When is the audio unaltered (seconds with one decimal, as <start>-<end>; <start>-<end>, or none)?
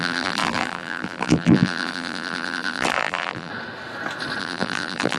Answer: 3.5-4.4